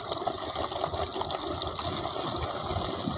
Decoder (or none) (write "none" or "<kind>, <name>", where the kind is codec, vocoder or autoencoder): none